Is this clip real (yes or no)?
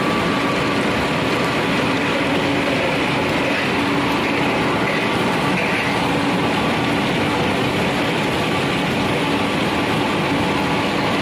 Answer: yes